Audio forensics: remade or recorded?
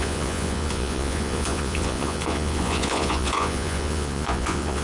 remade